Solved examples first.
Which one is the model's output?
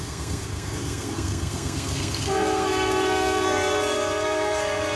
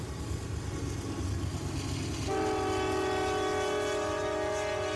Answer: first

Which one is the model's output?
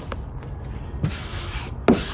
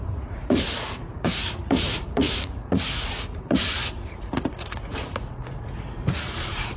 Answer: second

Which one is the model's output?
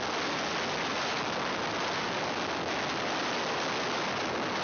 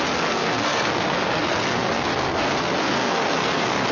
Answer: second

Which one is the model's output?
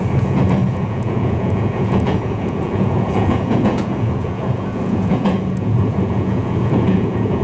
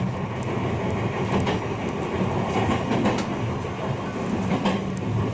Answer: first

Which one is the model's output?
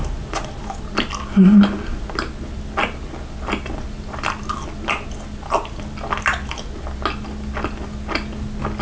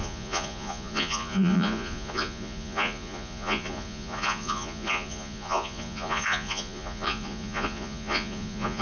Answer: second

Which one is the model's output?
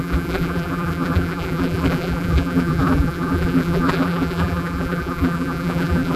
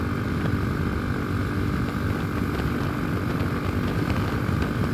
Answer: first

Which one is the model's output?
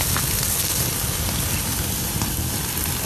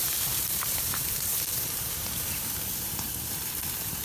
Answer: second